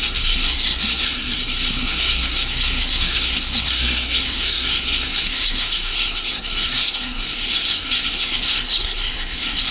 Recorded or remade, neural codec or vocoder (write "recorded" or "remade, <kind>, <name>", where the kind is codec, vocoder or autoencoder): remade, codec, SNAC